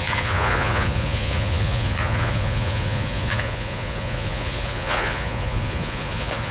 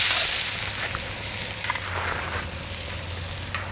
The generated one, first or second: first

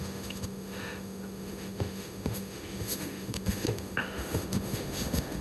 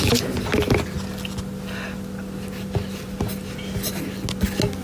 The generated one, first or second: first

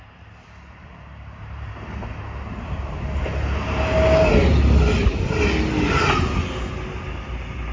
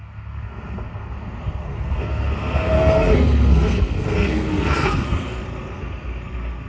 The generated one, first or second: second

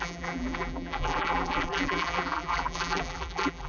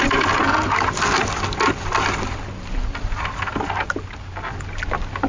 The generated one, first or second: first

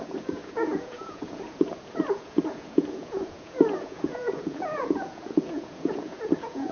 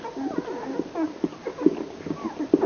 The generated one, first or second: first